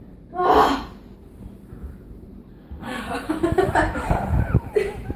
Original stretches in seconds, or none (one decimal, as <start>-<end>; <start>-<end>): 0.0-2.5; 3.0-5.2